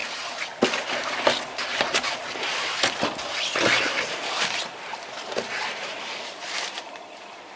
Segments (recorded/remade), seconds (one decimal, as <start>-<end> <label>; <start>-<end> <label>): 0.0-4.6 recorded; 4.6-7.6 remade